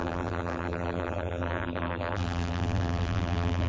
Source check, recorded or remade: remade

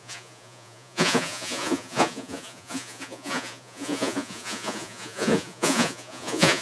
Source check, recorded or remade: remade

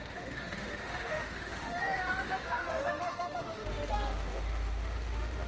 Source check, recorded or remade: remade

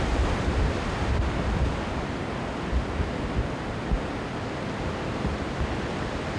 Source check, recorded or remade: recorded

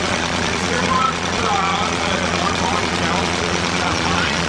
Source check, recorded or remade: remade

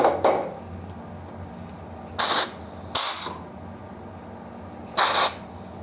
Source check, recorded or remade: recorded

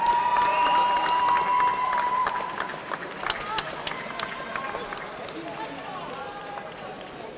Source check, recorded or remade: recorded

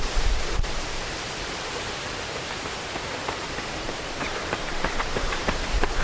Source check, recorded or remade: remade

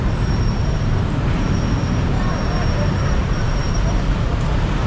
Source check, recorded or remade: remade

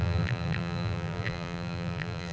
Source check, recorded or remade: remade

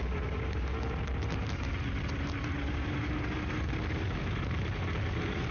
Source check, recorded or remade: remade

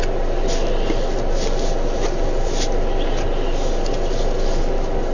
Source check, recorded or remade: recorded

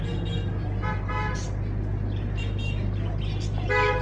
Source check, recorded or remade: recorded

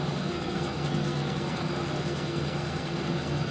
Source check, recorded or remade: remade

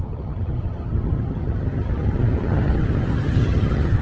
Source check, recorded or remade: remade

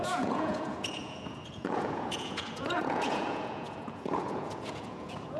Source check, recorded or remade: remade